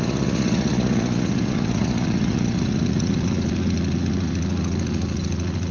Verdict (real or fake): fake